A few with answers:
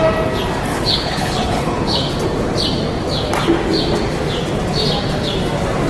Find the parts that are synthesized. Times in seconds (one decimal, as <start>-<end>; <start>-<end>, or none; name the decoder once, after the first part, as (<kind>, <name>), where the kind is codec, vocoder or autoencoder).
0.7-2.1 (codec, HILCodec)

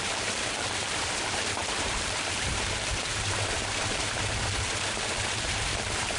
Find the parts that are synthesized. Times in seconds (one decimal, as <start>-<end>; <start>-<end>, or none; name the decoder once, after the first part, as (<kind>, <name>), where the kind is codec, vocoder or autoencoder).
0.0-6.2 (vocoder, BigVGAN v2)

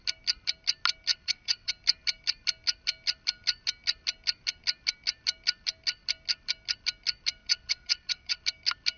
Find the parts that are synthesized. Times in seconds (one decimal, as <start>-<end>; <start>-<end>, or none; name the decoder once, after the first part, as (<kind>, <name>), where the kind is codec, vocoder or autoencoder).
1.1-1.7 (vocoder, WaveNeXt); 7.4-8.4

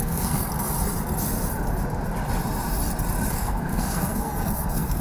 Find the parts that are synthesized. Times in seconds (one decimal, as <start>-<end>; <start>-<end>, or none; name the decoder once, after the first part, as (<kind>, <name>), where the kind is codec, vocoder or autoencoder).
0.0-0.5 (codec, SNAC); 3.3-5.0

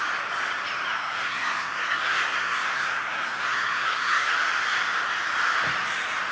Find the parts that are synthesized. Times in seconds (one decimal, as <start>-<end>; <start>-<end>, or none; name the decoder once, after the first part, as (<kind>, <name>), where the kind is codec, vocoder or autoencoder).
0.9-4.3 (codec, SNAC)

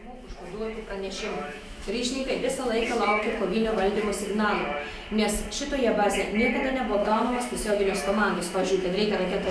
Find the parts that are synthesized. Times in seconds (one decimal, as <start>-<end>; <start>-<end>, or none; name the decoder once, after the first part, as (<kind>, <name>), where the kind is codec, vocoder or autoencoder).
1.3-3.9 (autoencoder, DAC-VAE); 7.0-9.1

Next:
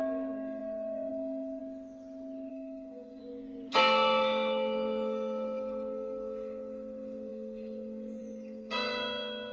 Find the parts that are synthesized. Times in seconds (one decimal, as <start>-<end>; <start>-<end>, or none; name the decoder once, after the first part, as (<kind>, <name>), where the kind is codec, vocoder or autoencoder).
0.0-1.6 (codec, SNAC); 2.5-3.2; 3.7-9.5